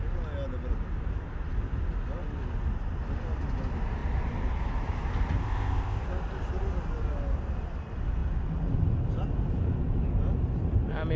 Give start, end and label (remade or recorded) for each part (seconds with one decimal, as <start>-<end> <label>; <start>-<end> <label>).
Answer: 0.0-5.4 recorded; 5.4-6.0 remade; 6.0-11.2 recorded